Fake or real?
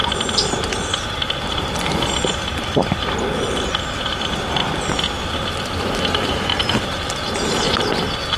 real